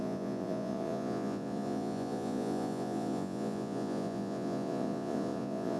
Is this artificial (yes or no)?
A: yes